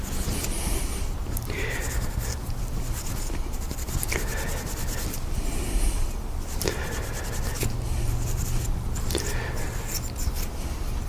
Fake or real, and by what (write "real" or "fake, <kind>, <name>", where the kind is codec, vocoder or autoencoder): real